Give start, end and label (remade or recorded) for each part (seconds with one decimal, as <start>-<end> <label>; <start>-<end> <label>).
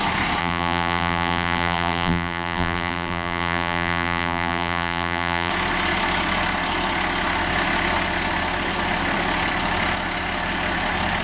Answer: 0.0-0.4 recorded; 0.4-5.5 remade; 5.5-11.2 recorded